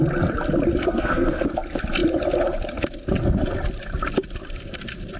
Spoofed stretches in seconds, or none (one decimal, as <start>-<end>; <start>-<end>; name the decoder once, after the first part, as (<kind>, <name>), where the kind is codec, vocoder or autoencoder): 0.8-1.5 (codec, SNAC)